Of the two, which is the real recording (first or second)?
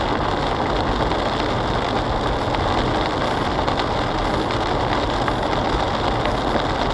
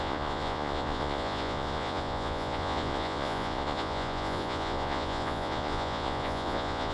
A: first